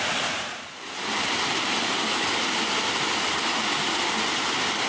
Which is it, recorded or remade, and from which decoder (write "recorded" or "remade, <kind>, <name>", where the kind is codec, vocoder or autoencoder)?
recorded